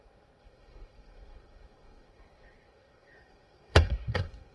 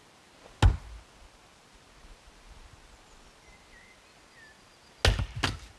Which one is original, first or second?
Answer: second